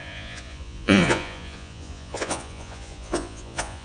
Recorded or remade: remade